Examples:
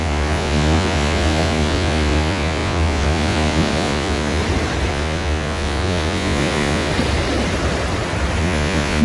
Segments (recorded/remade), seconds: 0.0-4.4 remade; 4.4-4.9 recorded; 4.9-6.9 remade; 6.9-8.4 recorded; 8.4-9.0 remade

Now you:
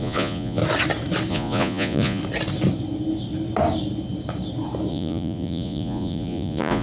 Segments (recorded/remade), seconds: 0.0-0.6 remade; 0.6-1.3 recorded; 1.3-2.2 remade; 2.2-4.9 recorded; 4.9-6.8 remade

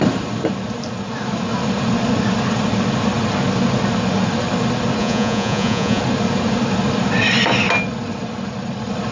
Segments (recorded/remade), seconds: 0.0-5.0 recorded; 5.0-6.0 remade; 6.0-9.1 recorded

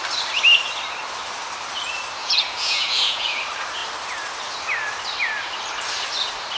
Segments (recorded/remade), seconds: 0.0-2.2 recorded; 2.2-3.3 remade; 3.3-6.6 recorded

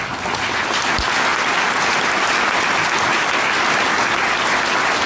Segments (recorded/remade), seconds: 0.0-5.1 recorded

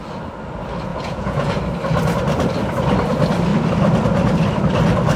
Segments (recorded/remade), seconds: 0.0-0.9 recorded; 0.9-1.6 remade; 1.6-5.2 recorded